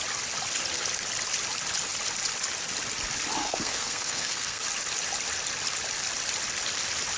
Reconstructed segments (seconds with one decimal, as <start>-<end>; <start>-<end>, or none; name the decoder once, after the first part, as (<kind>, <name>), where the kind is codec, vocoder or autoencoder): 3.4-4.6 (codec, SNAC)